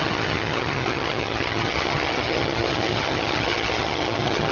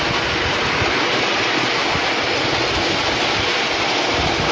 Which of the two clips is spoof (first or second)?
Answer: first